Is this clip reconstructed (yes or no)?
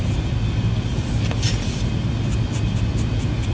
no